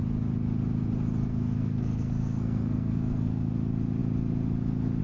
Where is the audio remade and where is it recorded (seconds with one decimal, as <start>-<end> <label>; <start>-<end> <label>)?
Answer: 0.0-1.3 recorded; 1.3-3.5 remade; 3.5-5.0 recorded